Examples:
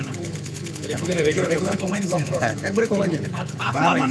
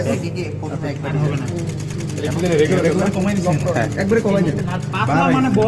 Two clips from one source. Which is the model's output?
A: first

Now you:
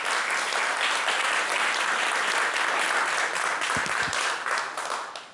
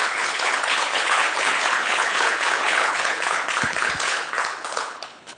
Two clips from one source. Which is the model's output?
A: second